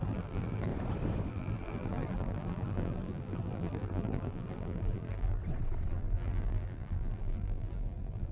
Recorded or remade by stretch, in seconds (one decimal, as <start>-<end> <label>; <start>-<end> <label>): 0.0-0.7 remade; 0.7-1.3 recorded; 1.3-5.4 remade; 5.4-5.9 recorded; 5.9-8.3 remade